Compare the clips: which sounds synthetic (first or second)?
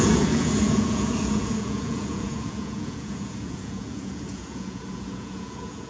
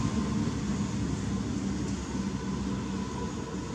first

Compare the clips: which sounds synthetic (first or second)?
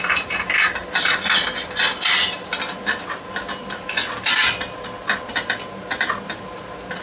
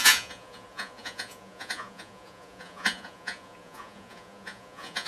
second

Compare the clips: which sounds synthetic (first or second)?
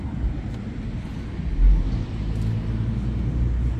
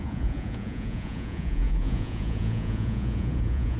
second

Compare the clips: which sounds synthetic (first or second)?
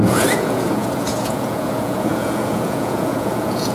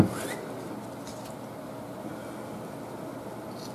first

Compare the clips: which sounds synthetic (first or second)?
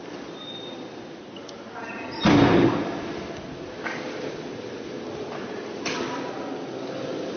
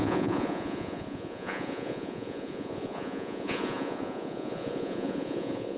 second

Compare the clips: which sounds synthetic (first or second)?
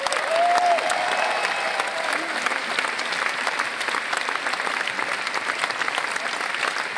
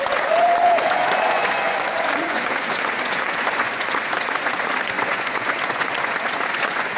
second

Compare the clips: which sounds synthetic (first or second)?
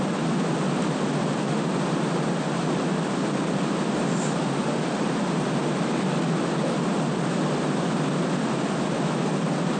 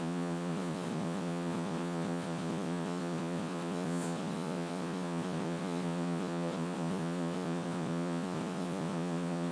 second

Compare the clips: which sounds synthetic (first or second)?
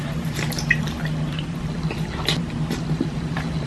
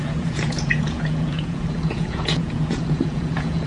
second